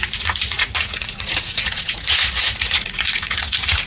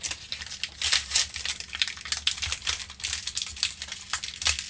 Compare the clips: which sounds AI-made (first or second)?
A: first